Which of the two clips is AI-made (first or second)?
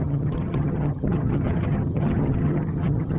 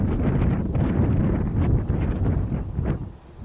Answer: first